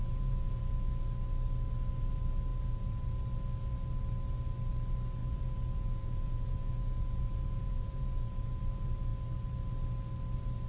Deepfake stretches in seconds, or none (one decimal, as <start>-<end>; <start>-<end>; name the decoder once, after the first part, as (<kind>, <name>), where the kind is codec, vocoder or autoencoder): 0.0-0.6 (vocoder, Vocos); 2.5-3.2; 5.2-8.6

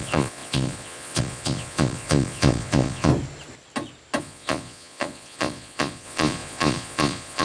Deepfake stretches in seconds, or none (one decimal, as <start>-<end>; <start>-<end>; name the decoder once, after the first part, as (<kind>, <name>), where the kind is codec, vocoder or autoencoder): 0.0-3.1 (vocoder, Vocos); 4.2-7.4

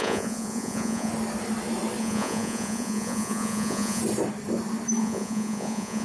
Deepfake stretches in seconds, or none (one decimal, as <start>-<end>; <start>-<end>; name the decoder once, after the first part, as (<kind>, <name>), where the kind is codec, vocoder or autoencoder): 0.0-1.1 (vocoder, Vocos); 2.0-4.0; 5.0-6.0